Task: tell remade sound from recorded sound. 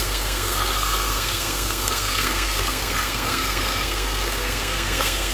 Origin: remade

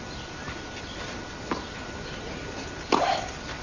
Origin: recorded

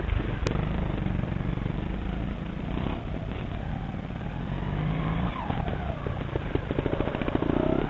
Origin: remade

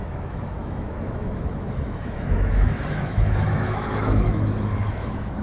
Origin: remade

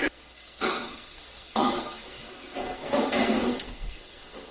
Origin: remade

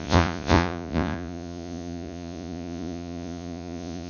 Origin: remade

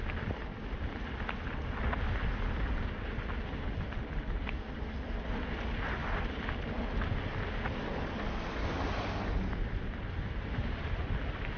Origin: recorded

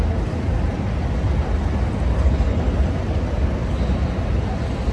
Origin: recorded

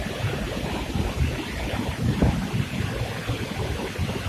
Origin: recorded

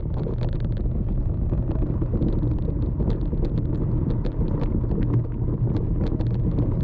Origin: recorded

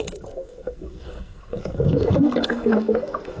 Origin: remade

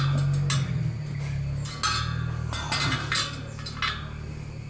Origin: recorded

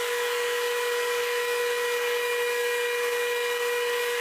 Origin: remade